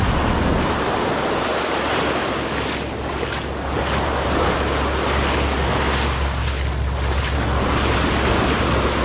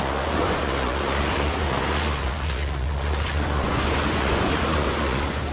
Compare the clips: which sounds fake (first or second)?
second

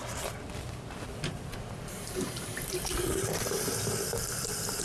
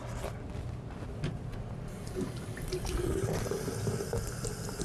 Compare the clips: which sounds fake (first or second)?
first